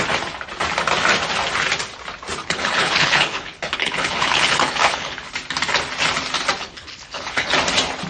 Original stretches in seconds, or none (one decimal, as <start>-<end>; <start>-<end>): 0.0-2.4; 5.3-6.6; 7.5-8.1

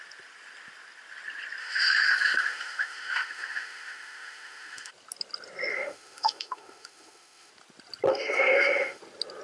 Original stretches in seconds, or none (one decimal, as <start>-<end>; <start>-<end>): 0.0-1.6; 4.9-5.7; 7.5-8.1; 9.0-9.4

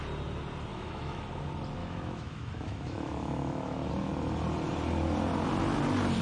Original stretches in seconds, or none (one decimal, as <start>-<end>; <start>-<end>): 0.0-0.7; 1.2-1.8; 3.9-6.2